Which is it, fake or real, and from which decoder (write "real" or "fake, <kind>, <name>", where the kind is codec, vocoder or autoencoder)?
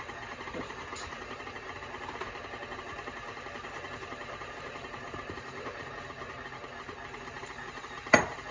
fake, vocoder, BigVGAN v2